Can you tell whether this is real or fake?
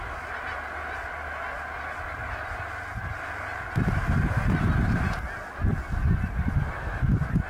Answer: real